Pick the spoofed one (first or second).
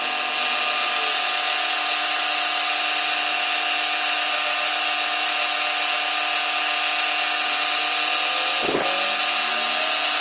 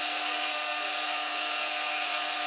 second